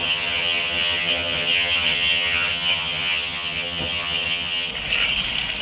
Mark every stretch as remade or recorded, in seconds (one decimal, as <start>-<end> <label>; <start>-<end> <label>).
0.0-4.7 remade; 4.7-5.6 recorded